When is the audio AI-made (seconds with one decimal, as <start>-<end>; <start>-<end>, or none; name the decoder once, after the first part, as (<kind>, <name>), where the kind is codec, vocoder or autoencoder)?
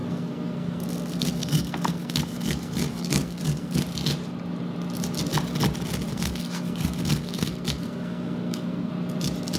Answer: 0.0-3.8 (codec, SNAC); 6.1-8.9